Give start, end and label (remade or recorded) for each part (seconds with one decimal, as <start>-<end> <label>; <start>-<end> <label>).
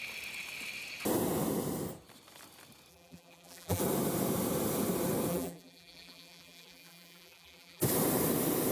0.0-2.9 recorded; 2.9-3.8 remade; 3.8-5.3 recorded; 5.3-7.8 remade; 7.8-8.7 recorded